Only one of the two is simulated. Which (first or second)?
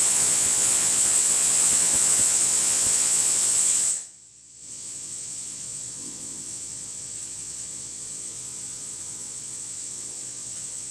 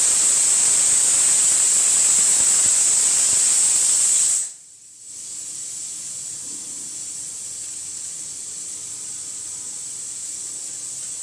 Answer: first